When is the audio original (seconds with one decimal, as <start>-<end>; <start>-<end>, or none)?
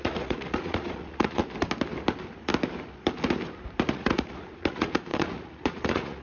1.4-3.9